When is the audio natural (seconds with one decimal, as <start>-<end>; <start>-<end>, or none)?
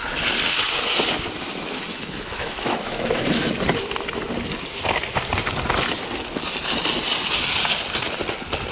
0.0-1.9; 3.5-8.7